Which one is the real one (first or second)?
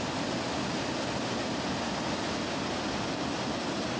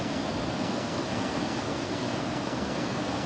first